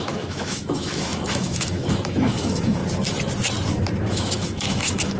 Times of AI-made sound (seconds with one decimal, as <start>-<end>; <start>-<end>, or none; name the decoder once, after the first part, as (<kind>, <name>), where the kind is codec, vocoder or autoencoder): 0.0-2.8 (autoencoder, DAC-VAE); 4.1-5.2